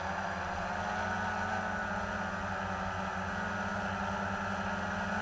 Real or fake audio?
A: real